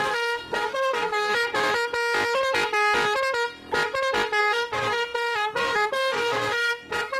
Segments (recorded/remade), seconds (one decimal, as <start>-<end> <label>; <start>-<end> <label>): 0.0-1.3 remade; 1.3-4.4 recorded; 4.4-7.2 remade